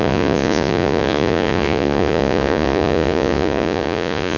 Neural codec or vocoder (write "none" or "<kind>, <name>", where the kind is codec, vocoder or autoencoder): vocoder, Vocos